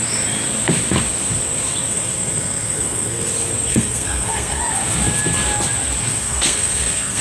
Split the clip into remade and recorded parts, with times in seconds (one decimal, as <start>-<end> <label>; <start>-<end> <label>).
0.0-1.9 recorded; 1.9-3.3 remade; 3.3-3.7 recorded; 3.7-4.6 remade; 4.6-6.0 recorded; 6.0-7.2 remade

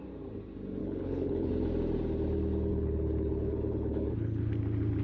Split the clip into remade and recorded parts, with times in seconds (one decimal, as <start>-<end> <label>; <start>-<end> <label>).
0.0-0.8 recorded; 0.8-1.5 remade; 1.5-2.7 recorded; 2.7-4.5 remade; 4.5-5.0 recorded

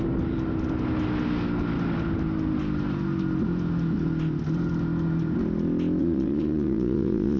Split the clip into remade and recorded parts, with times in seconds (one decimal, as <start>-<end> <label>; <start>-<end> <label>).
0.0-6.0 recorded; 6.0-7.4 remade

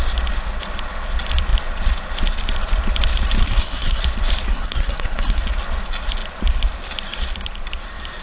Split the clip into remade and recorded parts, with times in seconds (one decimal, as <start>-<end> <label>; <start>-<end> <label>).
0.0-3.4 recorded; 3.4-4.0 remade; 4.0-4.5 recorded; 4.5-5.4 remade; 5.4-8.2 recorded